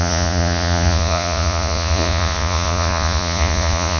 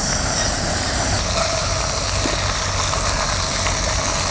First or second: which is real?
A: second